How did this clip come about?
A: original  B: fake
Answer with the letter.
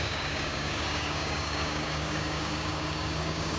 B